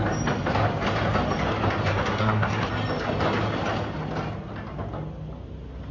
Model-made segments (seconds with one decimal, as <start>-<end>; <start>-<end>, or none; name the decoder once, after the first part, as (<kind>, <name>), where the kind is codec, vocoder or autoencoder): 1.9-2.7 (codec, SNAC)